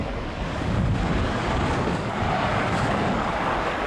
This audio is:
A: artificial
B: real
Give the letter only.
A